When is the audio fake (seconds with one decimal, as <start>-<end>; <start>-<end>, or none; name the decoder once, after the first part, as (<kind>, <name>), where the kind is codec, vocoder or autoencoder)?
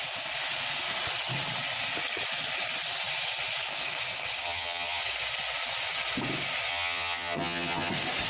4.4-5.0 (vocoder, HiFi-GAN); 6.7-7.9